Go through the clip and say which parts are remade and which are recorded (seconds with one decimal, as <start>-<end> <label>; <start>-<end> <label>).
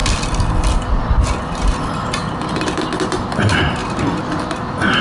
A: 0.0-5.0 recorded